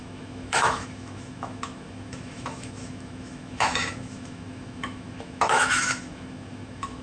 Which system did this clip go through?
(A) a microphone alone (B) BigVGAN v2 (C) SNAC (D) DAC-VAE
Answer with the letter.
D